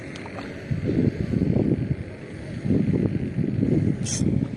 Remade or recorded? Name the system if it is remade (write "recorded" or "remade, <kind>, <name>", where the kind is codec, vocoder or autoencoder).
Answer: recorded